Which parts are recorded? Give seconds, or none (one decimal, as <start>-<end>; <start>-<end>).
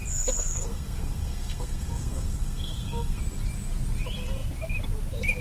3.2-5.4